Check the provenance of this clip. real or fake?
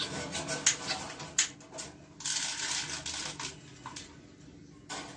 real